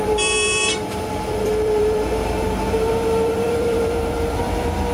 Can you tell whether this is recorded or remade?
remade